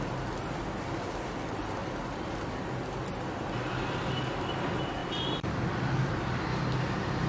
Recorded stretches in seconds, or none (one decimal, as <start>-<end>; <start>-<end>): 0.0-5.0; 6.4-7.3